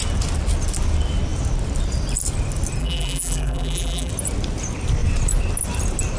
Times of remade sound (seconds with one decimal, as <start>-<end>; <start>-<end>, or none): 2.8-4.1